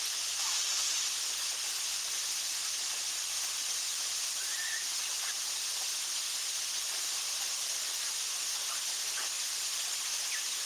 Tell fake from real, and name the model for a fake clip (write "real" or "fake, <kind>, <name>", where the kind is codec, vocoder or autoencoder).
real